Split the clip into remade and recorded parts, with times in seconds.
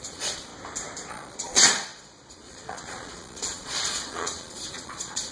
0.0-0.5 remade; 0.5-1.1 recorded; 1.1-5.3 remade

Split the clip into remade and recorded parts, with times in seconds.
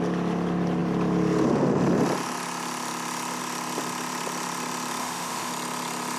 0.0-5.0 recorded; 5.0-5.5 remade; 5.5-6.2 recorded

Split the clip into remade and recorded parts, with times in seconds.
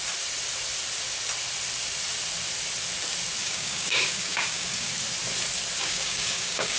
0.0-3.4 recorded; 3.4-4.9 remade; 4.9-5.8 recorded; 5.8-6.8 remade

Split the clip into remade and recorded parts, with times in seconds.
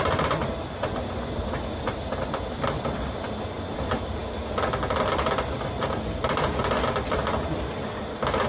0.0-8.5 recorded